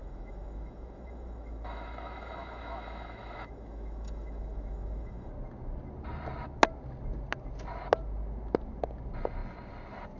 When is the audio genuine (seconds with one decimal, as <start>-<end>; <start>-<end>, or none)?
5.3-10.2